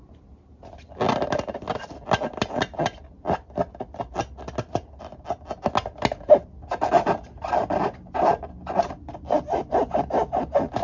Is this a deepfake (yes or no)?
no